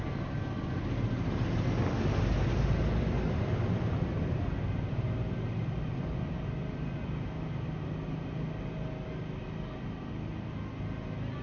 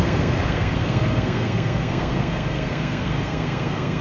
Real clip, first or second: first